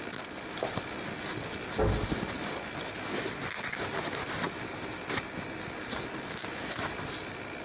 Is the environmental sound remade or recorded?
recorded